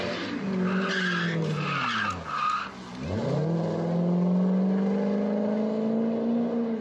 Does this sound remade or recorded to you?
recorded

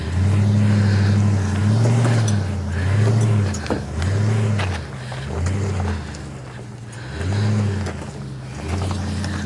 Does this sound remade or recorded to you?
recorded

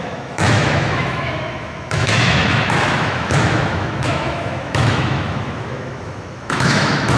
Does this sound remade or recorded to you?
remade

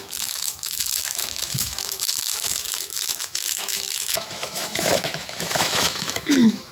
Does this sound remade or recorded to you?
remade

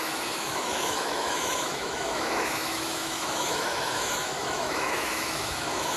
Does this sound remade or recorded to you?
remade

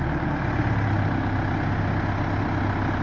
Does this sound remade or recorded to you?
recorded